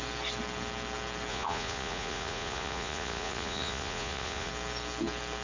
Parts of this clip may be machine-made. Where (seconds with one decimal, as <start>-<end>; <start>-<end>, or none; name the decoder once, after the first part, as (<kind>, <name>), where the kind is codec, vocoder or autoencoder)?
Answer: 1.3-4.5 (vocoder, Vocos)